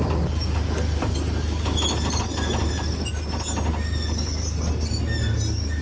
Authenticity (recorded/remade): recorded